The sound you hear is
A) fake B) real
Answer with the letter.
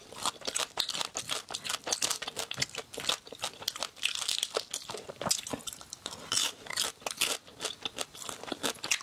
B